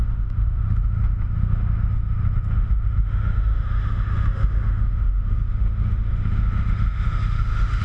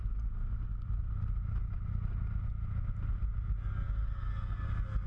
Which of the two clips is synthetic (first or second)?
first